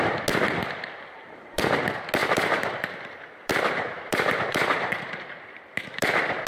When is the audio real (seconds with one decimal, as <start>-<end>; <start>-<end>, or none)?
0.0-0.6; 1.6-2.2; 6.1-6.5